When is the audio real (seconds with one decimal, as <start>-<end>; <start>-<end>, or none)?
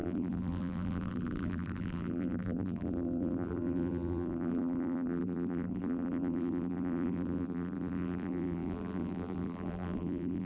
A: none